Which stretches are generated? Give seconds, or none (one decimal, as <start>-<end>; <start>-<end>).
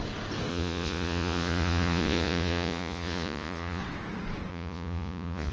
0.5-3.8; 4.5-5.5